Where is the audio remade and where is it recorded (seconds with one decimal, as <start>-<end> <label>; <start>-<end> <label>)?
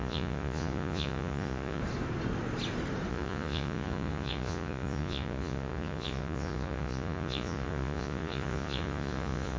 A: 0.0-1.8 remade; 1.8-3.1 recorded; 3.1-9.6 remade